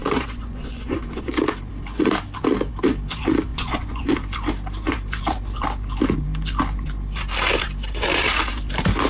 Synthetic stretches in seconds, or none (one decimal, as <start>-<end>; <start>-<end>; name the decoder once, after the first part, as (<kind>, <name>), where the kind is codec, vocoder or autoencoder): 0.0-1.4 (vocoder, Vocos); 3.5-4.1